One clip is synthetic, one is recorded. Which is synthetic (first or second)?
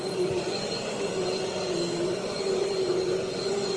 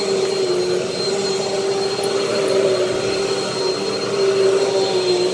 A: first